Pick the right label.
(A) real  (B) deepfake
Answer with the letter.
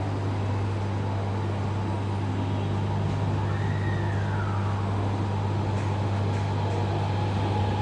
A